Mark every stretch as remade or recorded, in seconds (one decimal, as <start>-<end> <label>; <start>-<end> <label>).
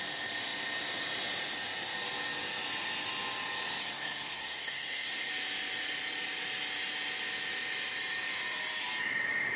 0.0-3.8 recorded; 3.8-5.3 remade; 5.3-9.6 recorded